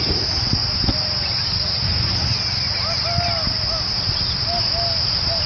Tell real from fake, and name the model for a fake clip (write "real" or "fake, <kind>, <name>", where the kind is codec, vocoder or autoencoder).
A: real